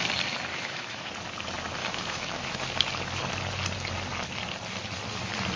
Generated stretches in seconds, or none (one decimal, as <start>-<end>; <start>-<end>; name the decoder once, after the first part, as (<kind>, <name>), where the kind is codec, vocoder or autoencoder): 0.5-1.1 (autoencoder, DAC-VAE); 1.8-2.5